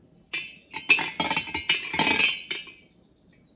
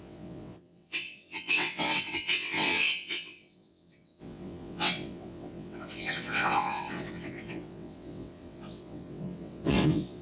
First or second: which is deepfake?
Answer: second